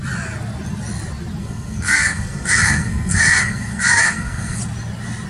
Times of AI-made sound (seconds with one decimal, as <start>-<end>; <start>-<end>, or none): 1.4-4.6